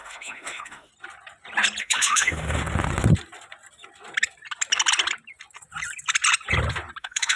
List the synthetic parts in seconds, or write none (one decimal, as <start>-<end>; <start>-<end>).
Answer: 0.0-0.9; 1.8-2.6; 7.0-7.4